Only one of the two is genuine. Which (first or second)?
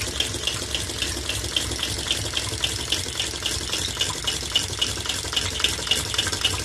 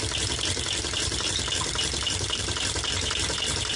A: first